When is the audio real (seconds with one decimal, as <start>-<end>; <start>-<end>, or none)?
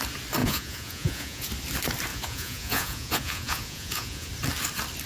0.0-0.4; 1.5-2.1; 4.3-5.1